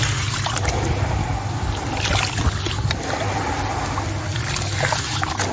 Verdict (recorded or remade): recorded